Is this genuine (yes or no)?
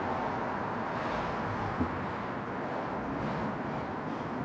yes